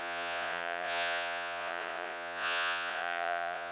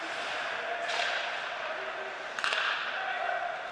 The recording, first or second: second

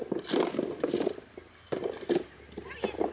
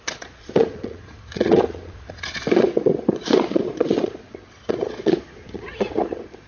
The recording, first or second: first